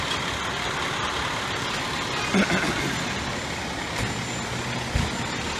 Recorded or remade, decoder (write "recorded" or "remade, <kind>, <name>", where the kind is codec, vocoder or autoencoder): recorded